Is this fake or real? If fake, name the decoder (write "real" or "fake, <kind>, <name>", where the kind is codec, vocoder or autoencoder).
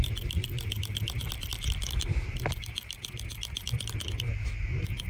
real